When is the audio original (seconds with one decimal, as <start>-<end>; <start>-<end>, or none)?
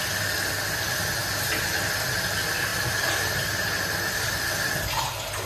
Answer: 0.0-5.5